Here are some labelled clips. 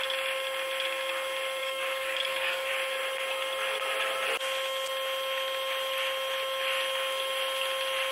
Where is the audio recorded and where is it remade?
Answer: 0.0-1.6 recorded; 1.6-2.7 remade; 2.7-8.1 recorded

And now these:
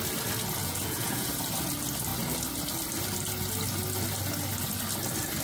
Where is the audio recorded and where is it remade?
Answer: 0.0-0.6 recorded; 0.6-1.3 remade; 1.3-5.4 recorded

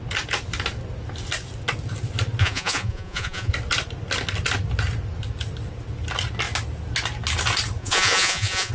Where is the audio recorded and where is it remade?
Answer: 0.0-2.4 recorded; 2.4-3.5 remade; 3.5-7.8 recorded; 7.8-8.7 remade

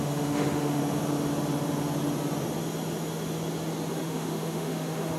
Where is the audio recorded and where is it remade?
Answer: 0.0-0.8 remade; 0.8-3.9 recorded; 3.9-5.2 remade